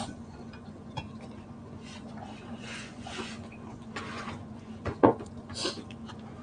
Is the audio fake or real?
fake